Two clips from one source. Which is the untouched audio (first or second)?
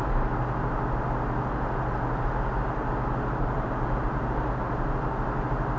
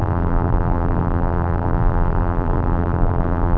first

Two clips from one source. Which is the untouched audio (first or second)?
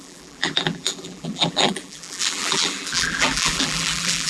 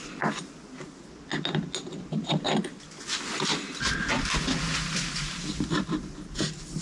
second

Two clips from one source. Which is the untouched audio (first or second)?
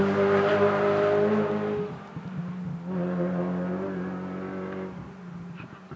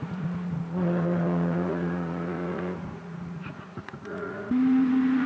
first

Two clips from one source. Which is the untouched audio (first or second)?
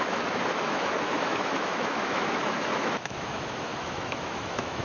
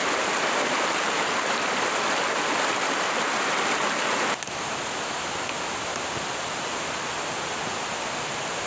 second